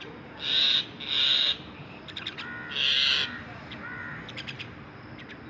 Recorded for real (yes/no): yes